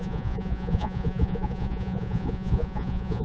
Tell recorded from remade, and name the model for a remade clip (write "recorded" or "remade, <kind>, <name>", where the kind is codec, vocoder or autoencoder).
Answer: remade, vocoder, Vocos